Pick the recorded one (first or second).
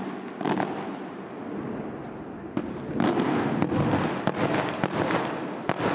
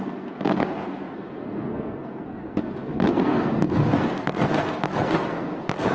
first